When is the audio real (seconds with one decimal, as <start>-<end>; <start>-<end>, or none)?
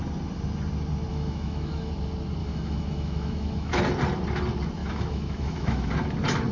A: 0.0-1.1; 1.9-2.4; 3.8-4.8; 5.9-6.5